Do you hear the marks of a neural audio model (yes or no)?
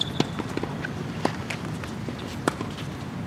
no